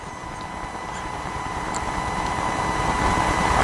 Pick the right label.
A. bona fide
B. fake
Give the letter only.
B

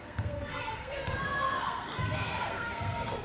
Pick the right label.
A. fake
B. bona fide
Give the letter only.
A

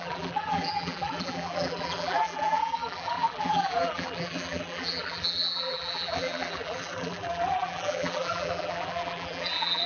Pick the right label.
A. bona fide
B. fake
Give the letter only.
B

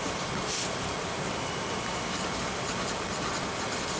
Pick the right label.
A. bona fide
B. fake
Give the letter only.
A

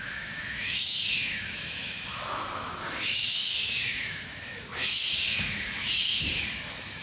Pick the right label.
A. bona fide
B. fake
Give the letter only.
B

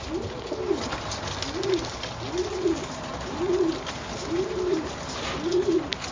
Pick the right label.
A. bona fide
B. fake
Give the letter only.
A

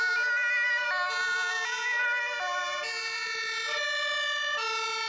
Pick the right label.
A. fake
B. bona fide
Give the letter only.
B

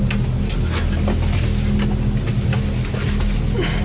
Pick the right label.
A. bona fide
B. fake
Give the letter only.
A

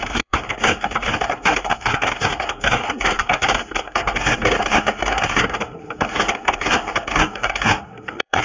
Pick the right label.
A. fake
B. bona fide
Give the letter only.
A